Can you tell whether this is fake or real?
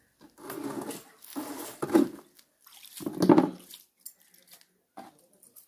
real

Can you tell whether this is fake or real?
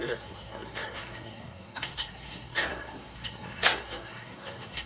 fake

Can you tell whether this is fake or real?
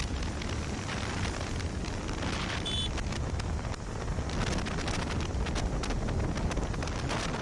real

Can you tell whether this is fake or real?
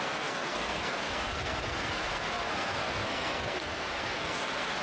fake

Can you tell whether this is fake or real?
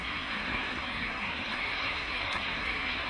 fake